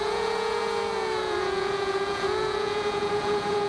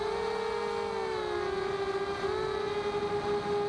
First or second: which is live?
second